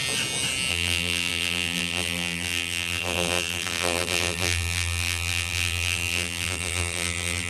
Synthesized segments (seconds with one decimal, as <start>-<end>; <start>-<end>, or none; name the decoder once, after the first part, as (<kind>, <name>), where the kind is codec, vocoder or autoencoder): 0.7-7.5 (vocoder, BigVGAN v2)